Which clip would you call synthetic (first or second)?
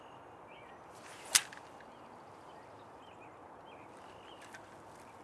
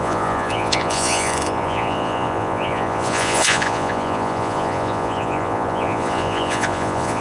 second